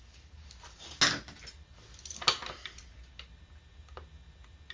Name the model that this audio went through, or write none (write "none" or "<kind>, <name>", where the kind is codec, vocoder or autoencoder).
none